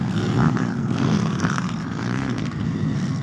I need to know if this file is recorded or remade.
remade